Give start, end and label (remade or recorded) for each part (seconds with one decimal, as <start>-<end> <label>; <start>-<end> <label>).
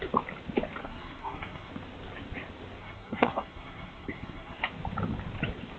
0.0-0.8 recorded; 0.8-1.7 remade; 1.7-2.8 recorded; 2.8-4.6 remade; 4.6-5.8 recorded